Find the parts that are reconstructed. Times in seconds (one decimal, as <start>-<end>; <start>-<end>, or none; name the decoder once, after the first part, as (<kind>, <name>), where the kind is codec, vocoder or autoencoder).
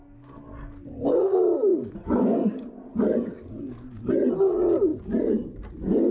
none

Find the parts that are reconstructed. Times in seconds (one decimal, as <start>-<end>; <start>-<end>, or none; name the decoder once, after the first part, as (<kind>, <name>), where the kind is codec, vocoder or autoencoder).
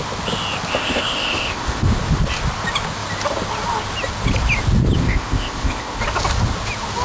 0.7-1.9 (codec, ZipCodec); 5.0-6.0